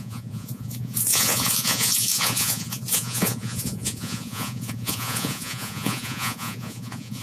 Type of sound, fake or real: fake